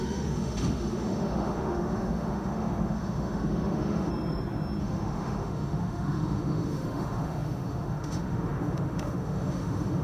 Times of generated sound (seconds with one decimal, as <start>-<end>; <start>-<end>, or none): 0.0-4.1; 4.8-10.0

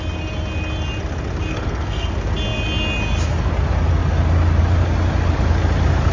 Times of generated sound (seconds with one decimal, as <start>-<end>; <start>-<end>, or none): 1.5-2.1

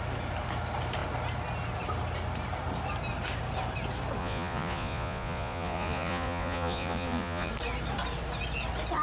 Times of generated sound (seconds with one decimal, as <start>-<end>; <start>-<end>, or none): 4.2-7.5

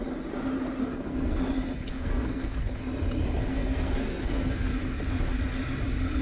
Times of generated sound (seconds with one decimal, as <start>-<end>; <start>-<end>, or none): 0.8-1.4; 1.9-2.6; 3.5-4.8